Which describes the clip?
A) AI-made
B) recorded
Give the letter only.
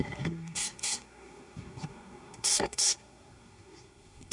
A